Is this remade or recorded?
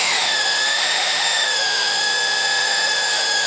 remade